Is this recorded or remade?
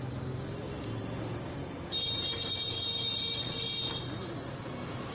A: recorded